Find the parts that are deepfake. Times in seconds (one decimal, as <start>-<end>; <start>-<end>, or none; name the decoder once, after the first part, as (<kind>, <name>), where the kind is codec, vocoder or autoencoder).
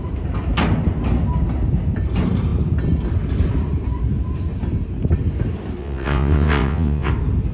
5.8-7.1 (vocoder, WaveNeXt)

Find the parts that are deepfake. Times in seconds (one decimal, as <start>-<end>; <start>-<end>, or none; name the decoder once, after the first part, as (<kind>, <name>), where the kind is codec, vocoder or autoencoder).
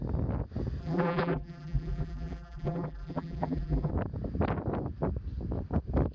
0.8-3.9 (vocoder, BigVGAN v2)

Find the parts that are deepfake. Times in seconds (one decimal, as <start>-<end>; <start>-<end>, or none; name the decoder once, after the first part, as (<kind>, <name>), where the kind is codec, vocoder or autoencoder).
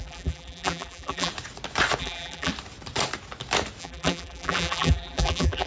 0.0-1.3 (vocoder, BigVGAN v2); 2.0-2.5; 3.8-5.7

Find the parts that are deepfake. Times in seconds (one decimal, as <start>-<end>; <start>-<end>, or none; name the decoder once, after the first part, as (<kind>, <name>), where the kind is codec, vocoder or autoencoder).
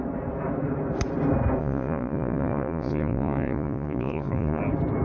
1.6-4.6 (vocoder, Vocos)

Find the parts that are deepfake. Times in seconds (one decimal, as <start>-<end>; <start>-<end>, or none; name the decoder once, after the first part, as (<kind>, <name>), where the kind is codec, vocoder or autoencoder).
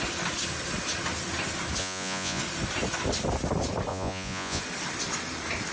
1.8-2.4 (vocoder, Vocos); 3.9-4.6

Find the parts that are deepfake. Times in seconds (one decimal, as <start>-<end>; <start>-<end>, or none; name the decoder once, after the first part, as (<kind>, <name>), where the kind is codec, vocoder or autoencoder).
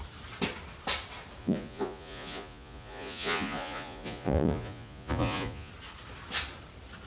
1.4-5.7 (vocoder, Vocos)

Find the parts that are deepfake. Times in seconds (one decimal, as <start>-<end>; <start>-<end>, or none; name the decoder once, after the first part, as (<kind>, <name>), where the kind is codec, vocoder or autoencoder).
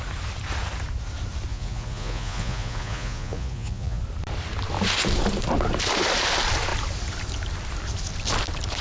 1.5-4.0 (vocoder, Vocos)